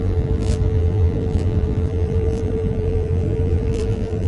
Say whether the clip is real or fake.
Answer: fake